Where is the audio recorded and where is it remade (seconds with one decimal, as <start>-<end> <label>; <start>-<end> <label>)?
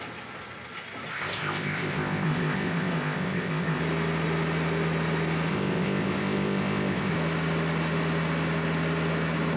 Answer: 0.0-1.1 recorded; 1.1-3.8 remade; 3.8-5.5 recorded; 5.5-7.1 remade; 7.1-9.6 recorded